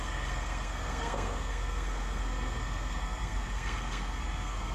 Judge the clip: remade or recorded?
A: remade